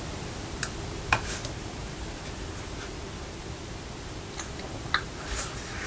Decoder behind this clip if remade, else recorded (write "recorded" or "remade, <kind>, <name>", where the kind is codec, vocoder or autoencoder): recorded